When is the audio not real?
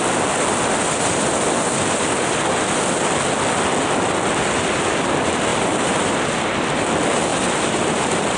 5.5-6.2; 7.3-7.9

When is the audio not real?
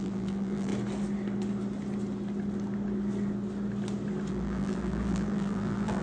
0.0-0.7; 4.3-6.0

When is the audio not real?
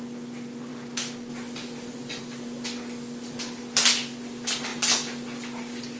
none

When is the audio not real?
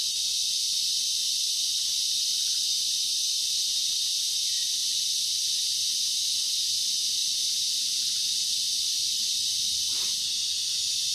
1.2-3.6; 4.8-5.6; 7.2-9.7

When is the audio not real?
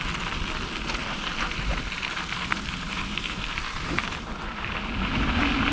1.0-4.0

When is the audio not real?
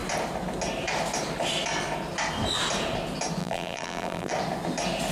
3.4-4.3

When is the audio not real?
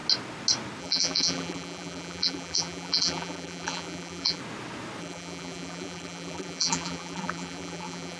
0.8-4.4; 5.0-8.2